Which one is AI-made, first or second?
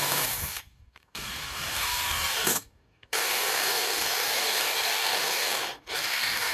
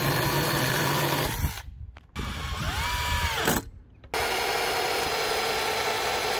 first